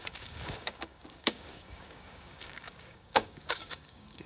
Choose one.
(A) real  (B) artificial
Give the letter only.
B